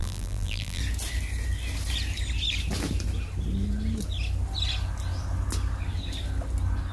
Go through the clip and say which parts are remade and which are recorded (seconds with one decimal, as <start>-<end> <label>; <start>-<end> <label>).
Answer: 0.0-0.8 remade; 0.8-6.9 recorded